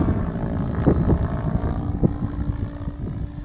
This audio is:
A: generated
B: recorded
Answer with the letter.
B